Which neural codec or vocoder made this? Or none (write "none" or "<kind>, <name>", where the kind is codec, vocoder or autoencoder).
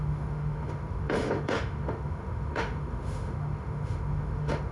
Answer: autoencoder, DAC-VAE